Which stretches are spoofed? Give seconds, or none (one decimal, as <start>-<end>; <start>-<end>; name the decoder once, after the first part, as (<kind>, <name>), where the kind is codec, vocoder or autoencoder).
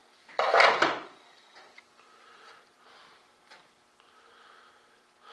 0.0-3.2 (vocoder, BigVGAN v2)